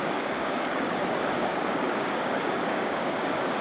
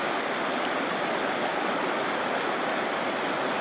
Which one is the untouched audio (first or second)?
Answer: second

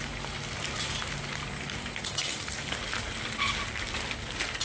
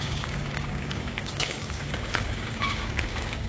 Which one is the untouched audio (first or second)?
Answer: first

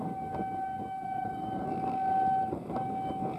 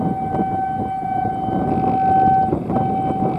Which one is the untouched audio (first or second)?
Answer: second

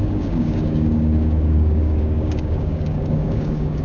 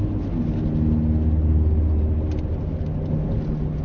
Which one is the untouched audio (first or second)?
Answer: second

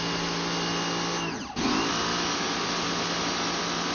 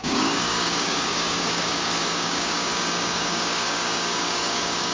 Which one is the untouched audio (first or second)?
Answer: first